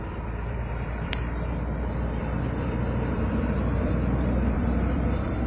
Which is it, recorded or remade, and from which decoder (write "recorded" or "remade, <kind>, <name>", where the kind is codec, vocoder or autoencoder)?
remade, vocoder, BigVGAN v2